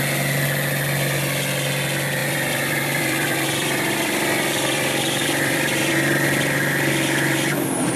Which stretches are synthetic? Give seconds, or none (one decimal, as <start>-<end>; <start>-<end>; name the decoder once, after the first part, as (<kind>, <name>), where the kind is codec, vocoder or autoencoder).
2.2-5.9 (vocoder, BigVGAN v2)